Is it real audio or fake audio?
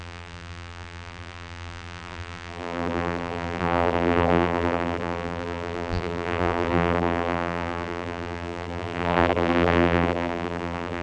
fake